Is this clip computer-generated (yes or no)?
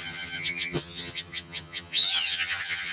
yes